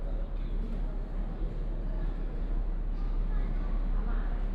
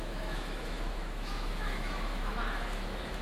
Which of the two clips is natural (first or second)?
first